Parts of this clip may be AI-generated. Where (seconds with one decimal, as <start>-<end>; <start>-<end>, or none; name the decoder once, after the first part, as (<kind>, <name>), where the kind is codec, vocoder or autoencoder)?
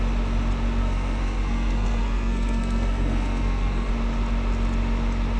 0.8-3.9 (codec, SNAC)